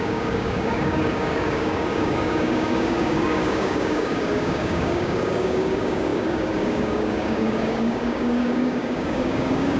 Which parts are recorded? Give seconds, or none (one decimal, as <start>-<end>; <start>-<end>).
none